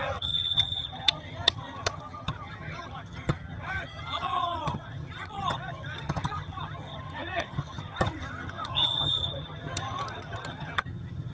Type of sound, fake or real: fake